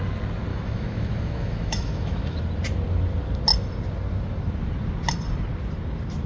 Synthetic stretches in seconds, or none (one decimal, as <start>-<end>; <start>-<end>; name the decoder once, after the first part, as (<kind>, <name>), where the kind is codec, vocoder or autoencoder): 0.5-2.4 (autoencoder, DAC-VAE)